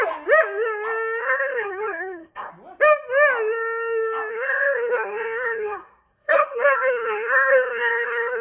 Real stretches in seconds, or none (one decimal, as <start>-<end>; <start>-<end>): 0.0-1.2; 2.5-4.3